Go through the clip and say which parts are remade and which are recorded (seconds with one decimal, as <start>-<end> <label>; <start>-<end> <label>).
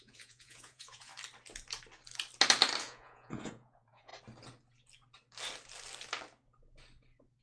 0.0-1.1 remade; 1.1-2.8 recorded; 2.8-4.1 remade; 4.1-7.4 recorded